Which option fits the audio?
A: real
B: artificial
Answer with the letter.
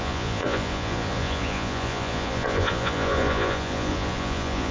B